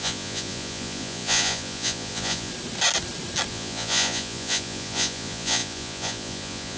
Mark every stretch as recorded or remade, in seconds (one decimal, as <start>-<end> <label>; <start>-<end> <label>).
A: 0.0-2.5 remade; 2.5-3.5 recorded; 3.5-6.8 remade